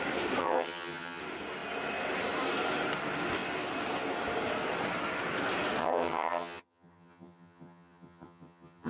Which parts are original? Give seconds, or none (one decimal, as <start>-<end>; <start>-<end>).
0.0-0.4; 1.2-5.8